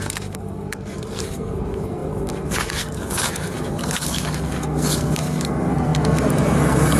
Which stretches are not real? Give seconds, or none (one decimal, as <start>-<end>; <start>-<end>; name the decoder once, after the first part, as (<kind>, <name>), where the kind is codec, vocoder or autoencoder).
0.0-7.0 (codec, SNAC)